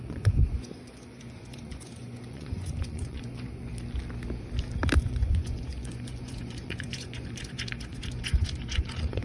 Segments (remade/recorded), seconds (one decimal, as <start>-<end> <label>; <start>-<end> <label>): 0.0-3.7 remade; 3.7-5.0 recorded; 5.0-9.2 remade